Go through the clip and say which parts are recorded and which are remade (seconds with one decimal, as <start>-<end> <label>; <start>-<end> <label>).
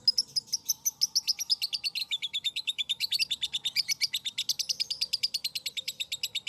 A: 0.0-2.0 recorded; 2.0-3.2 remade; 3.2-6.5 recorded